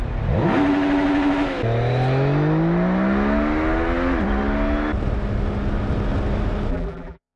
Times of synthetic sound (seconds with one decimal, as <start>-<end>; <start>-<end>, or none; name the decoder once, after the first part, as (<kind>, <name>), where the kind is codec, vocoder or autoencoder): 6.7-7.4 (vocoder, BigVGAN v2)